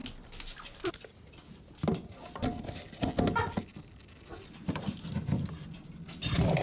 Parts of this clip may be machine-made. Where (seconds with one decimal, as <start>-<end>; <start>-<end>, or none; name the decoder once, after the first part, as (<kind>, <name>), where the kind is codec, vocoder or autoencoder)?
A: none